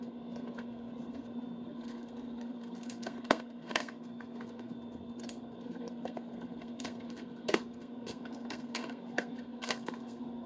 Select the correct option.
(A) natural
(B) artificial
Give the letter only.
B